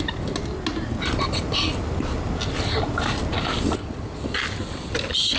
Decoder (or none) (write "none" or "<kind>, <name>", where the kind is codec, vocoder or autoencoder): none